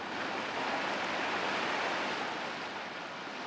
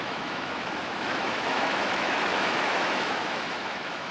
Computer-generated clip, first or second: second